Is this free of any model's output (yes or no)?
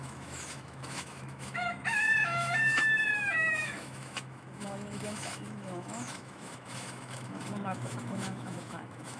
no